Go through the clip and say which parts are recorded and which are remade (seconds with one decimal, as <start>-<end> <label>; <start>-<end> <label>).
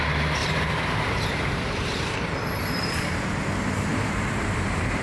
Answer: 0.0-0.4 recorded; 0.4-3.4 remade; 3.4-3.9 recorded; 3.9-5.0 remade